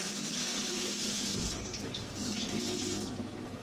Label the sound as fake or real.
fake